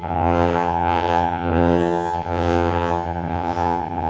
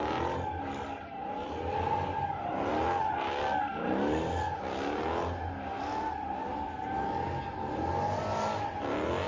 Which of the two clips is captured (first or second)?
second